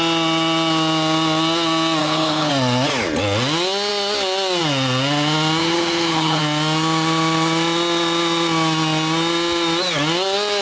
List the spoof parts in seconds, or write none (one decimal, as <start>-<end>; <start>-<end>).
2.0-2.5; 5.6-6.4